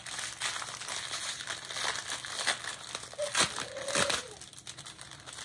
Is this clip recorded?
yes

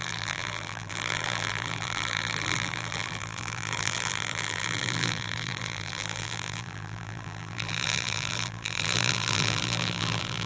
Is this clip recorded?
no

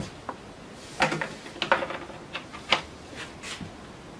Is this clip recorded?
yes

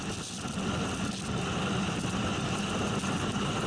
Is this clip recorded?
yes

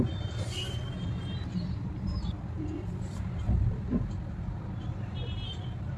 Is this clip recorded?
no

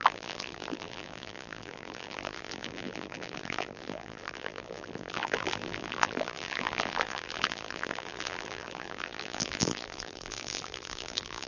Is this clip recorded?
no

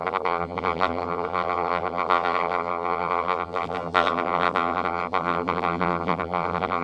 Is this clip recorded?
no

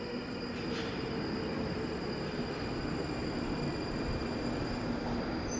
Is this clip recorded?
yes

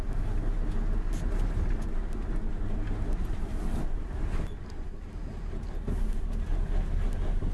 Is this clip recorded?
yes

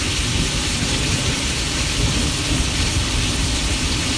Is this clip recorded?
no